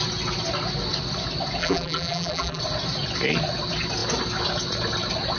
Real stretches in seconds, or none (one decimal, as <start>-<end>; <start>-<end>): 0.0-1.6; 2.6-5.4